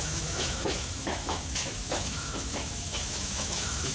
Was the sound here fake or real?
fake